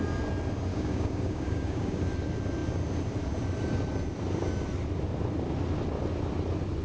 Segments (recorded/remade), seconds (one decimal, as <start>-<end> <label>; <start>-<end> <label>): 0.0-0.7 recorded; 0.7-2.0 remade; 2.0-6.8 recorded